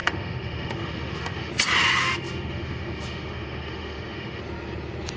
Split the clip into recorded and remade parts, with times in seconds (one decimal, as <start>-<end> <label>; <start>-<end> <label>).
0.0-1.5 remade; 1.5-2.0 recorded; 2.0-4.4 remade; 4.4-5.2 recorded